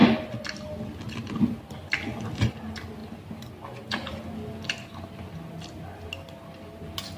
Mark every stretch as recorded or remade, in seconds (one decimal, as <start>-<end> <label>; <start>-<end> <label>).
0.0-7.2 recorded